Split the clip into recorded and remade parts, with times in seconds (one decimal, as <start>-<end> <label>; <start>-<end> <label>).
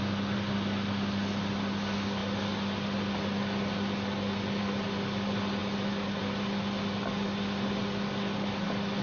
0.0-9.0 recorded